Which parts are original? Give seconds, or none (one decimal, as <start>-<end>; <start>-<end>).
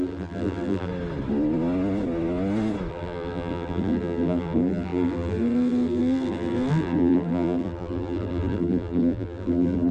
0.9-2.9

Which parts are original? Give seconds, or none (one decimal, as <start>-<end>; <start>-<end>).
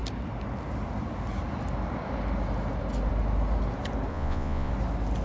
0.0-4.1; 4.7-5.2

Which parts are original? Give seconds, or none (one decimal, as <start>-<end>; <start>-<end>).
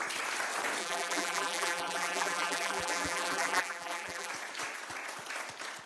0.0-0.8; 4.3-5.9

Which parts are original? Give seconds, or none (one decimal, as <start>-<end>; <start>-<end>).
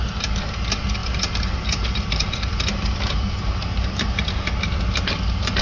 0.0-1.0; 4.2-5.6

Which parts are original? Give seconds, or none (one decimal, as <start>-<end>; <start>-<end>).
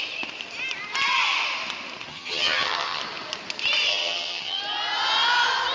0.0-2.1; 3.0-3.9; 4.6-5.7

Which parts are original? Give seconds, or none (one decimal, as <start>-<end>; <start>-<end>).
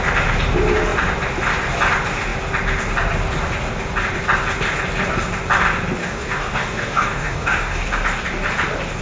0.0-6.0; 7.8-9.0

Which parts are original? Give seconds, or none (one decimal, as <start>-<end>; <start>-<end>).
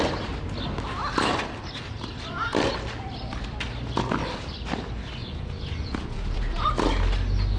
0.0-5.2; 6.7-7.6